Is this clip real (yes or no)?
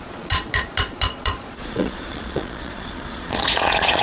no